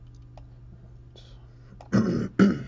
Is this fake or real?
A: real